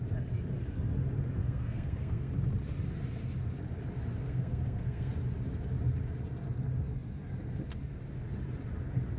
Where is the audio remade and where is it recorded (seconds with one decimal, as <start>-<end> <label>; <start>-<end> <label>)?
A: 0.0-1.4 recorded; 1.4-2.3 remade; 2.3-4.2 recorded; 4.2-5.1 remade; 5.1-9.2 recorded

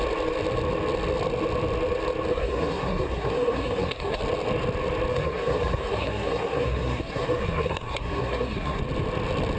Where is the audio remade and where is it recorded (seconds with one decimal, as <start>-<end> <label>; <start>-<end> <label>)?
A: 0.0-2.3 recorded; 2.3-4.2 remade; 4.2-5.1 recorded; 5.1-8.8 remade; 8.8-9.6 recorded

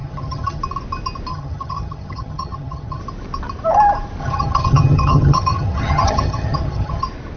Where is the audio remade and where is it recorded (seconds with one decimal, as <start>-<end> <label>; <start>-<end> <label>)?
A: 0.0-0.6 remade; 0.6-1.3 recorded; 1.3-3.0 remade; 3.0-4.2 recorded; 4.2-7.0 remade; 7.0-7.4 recorded